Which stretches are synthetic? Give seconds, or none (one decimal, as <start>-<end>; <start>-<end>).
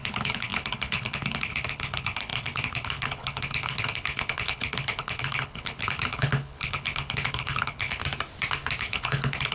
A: 0.0-8.0; 8.8-9.5